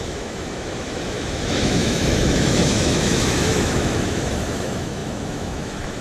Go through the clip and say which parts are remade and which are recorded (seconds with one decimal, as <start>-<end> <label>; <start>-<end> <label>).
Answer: 0.0-6.0 remade